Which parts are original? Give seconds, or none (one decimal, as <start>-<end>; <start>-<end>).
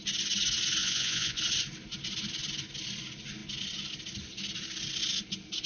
0.0-0.8; 1.4-5.7